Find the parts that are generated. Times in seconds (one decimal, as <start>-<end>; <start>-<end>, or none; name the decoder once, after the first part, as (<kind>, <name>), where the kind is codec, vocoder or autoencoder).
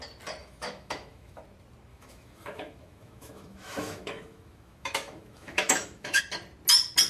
0.4-1.4 (autoencoder, DAC-VAE); 1.9-6.2